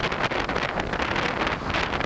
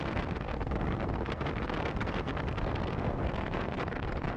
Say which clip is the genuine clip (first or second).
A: first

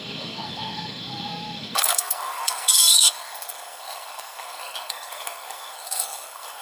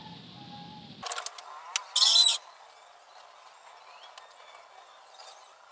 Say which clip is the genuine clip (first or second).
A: second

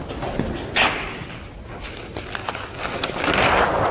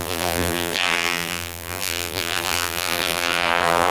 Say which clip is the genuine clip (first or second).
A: first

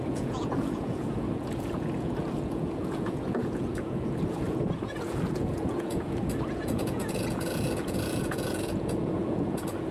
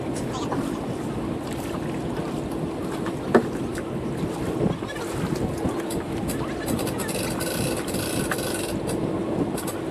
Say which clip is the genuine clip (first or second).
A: second